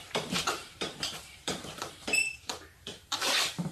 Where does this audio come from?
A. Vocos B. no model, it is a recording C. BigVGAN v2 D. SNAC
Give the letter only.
C